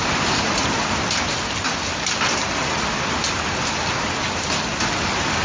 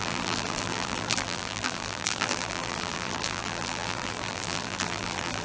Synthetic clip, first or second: second